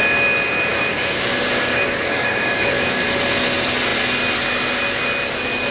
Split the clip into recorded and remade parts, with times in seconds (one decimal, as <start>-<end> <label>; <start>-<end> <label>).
0.0-0.7 recorded; 0.7-3.0 remade; 3.0-5.7 recorded

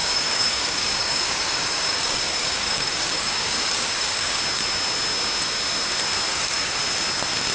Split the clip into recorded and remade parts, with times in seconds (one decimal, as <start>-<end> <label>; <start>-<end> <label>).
0.0-4.4 remade; 4.4-6.3 recorded; 6.3-6.8 remade; 6.8-7.5 recorded

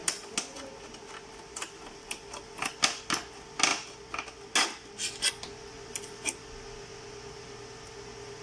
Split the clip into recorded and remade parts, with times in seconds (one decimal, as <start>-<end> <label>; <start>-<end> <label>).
0.0-8.4 recorded

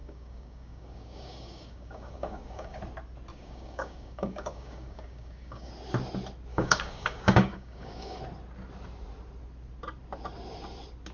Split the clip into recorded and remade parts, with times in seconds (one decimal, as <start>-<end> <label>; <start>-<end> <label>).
0.0-2.8 remade; 2.8-3.3 recorded; 3.3-5.7 remade; 5.7-6.5 recorded; 6.5-8.2 remade; 8.2-11.1 recorded